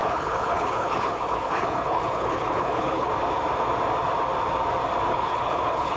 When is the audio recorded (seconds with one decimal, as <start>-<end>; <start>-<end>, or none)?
3.1-5.1